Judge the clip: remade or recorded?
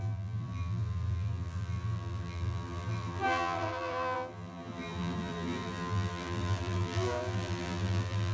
remade